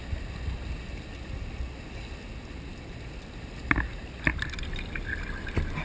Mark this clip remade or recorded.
recorded